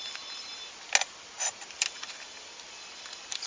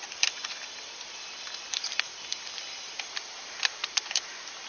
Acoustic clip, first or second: first